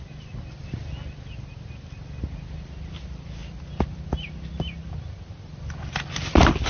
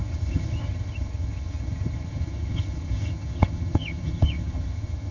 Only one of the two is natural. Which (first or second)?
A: first